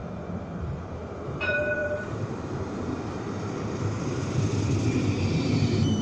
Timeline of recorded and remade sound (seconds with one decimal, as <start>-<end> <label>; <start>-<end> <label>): 0.0-6.0 remade